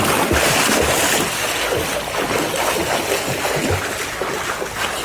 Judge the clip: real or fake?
real